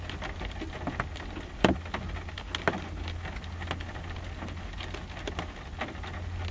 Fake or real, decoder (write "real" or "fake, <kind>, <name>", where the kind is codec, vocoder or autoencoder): real